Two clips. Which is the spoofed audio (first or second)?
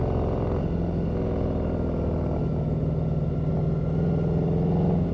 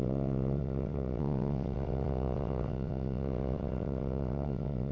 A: second